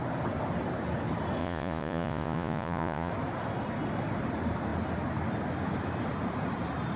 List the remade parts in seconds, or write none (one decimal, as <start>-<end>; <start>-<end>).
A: 1.4-3.1